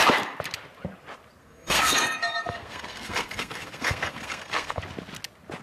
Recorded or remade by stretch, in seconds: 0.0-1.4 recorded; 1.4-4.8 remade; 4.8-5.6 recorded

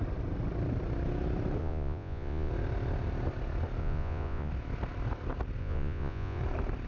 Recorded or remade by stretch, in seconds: 0.0-1.6 recorded; 1.6-2.5 remade; 2.5-3.8 recorded; 3.8-4.5 remade; 4.5-5.6 recorded; 5.6-6.4 remade; 6.4-6.9 recorded